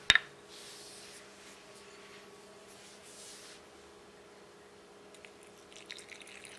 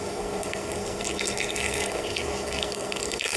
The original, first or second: first